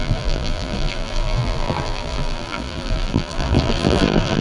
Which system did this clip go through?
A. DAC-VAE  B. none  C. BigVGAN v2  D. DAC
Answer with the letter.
C